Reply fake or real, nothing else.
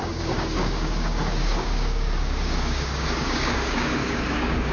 fake